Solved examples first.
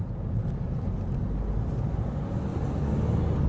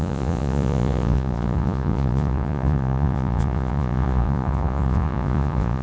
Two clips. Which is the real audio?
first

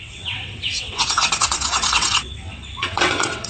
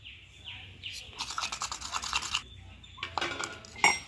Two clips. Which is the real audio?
second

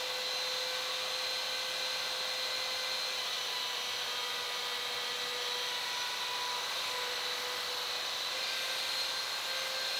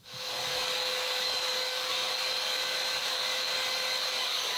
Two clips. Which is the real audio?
first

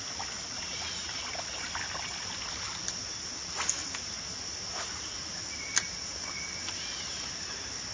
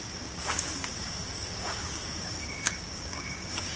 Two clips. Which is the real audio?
first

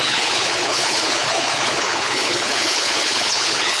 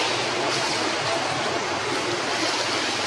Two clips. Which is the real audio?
second